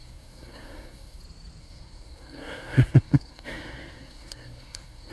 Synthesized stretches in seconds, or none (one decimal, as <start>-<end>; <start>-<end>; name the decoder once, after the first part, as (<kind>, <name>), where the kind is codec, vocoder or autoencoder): 0.0-1.2 (codec, SNAC); 1.6-5.1

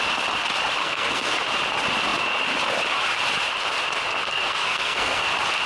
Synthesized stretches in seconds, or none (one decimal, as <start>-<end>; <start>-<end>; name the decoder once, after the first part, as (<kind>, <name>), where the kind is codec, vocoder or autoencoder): 0.8-1.4 (codec, SNAC); 4.2-5.3

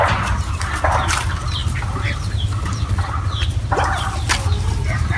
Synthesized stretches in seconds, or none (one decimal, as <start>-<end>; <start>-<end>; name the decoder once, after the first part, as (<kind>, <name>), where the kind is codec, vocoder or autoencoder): none

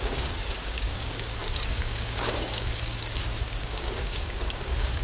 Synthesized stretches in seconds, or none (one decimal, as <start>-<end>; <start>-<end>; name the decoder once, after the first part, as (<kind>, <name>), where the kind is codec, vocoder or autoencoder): 0.0-5.0 (codec, DAC)